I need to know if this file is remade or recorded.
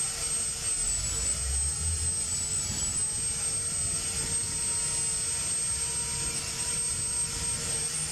recorded